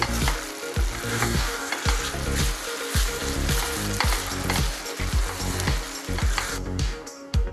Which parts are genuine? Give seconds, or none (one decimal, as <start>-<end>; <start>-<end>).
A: 0.0-1.1; 1.7-6.5